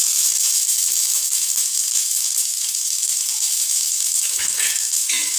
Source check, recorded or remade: remade